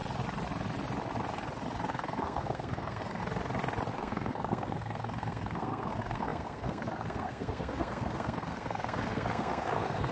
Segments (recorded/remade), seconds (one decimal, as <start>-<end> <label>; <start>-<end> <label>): 0.0-1.9 recorded; 1.9-3.2 remade; 3.2-3.9 recorded; 3.9-10.1 remade

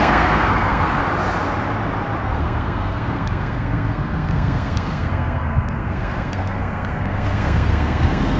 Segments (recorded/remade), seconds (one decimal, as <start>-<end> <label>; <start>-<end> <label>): 0.0-1.0 remade; 1.0-2.2 recorded; 2.2-8.4 remade

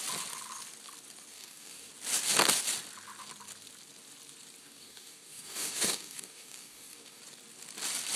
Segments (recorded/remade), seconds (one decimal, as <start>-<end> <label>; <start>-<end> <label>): 0.0-1.3 recorded; 1.3-1.9 remade; 1.9-4.6 recorded; 4.6-7.2 remade; 7.2-8.2 recorded

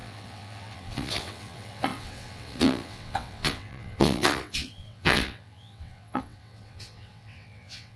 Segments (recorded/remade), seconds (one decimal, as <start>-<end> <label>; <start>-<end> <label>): 0.0-8.0 remade

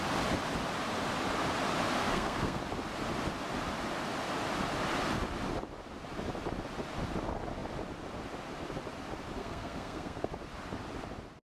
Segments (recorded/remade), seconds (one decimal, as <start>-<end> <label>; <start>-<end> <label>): 0.0-2.0 recorded; 2.0-2.6 remade; 2.6-9.4 recorded; 9.4-10.3 remade; 10.3-11.5 recorded

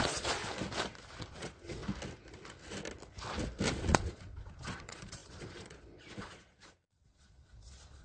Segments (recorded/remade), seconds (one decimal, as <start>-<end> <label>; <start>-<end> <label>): 0.0-0.4 remade; 0.4-1.3 recorded; 1.3-1.8 remade; 1.8-3.7 recorded; 3.7-8.0 remade